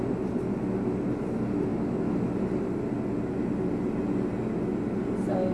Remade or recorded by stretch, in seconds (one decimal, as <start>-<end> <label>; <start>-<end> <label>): 0.0-5.5 recorded